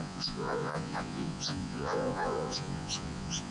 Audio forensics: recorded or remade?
remade